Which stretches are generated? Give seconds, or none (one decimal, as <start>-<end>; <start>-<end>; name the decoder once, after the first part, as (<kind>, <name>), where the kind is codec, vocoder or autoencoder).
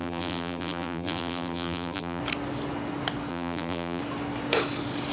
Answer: 0.0-2.2 (vocoder, BigVGAN v2); 3.3-4.0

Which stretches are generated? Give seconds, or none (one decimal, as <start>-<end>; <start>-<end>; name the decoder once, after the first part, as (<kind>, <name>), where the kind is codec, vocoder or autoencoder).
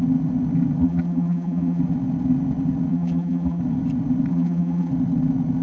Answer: 0.8-1.8 (vocoder, BigVGAN v2); 2.9-3.6; 4.3-4.9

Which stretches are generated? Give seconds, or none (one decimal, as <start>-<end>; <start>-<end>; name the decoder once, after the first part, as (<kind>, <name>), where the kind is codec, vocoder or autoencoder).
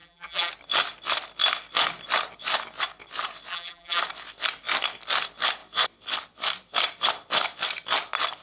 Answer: 0.0-0.5 (vocoder, BigVGAN v2); 3.5-4.0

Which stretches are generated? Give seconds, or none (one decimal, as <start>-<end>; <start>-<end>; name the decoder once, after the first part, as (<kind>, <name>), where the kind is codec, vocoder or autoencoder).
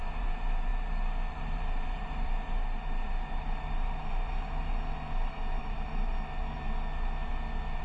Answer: 0.0-0.7 (vocoder, BigVGAN v2); 1.3-4.3; 5.6-6.1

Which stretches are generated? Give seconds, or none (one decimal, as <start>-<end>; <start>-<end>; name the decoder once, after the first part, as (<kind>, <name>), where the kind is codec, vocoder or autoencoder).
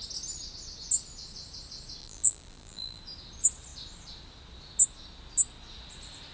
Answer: 2.0-3.0 (vocoder, BigVGAN v2)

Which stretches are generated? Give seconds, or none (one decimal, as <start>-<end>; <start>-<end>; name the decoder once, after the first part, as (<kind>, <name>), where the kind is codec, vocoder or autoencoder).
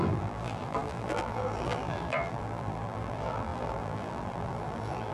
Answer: 0.0-5.1 (vocoder, BigVGAN v2)